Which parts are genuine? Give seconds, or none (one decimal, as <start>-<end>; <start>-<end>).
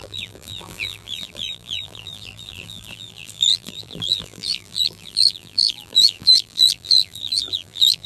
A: none